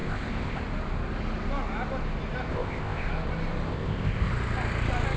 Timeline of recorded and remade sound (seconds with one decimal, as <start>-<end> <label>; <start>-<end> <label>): 0.0-0.6 remade; 0.6-2.5 recorded; 2.5-3.1 remade; 3.1-3.7 recorded; 3.7-4.3 remade; 4.3-5.2 recorded